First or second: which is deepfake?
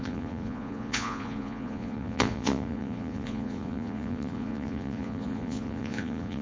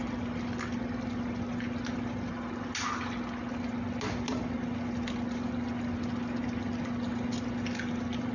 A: first